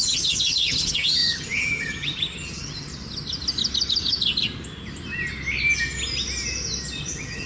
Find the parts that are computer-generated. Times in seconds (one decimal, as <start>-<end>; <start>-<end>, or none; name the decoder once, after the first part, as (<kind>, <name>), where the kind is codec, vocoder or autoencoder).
0.0-2.9 (vocoder, HiFi-GAN); 7.0-7.5